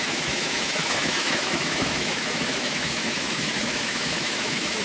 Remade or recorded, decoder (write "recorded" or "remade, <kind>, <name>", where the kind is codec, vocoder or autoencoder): remade, autoencoder, DAC-VAE